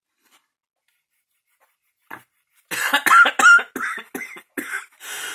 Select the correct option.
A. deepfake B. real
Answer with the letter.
B